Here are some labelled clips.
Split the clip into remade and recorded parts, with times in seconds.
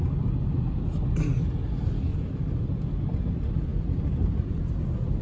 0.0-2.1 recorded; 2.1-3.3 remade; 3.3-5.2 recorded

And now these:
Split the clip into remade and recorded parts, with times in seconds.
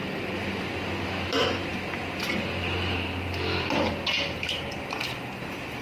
0.0-0.6 remade; 0.6-5.8 recorded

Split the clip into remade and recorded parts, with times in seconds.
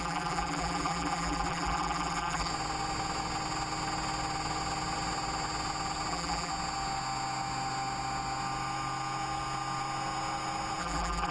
0.0-2.5 remade; 2.5-6.1 recorded; 6.1-6.5 remade; 6.5-10.8 recorded; 10.8-11.3 remade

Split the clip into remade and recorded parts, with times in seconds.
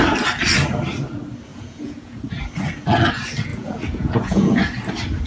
0.0-1.5 recorded; 1.5-2.2 remade; 2.2-3.5 recorded; 3.5-4.6 remade; 4.6-5.3 recorded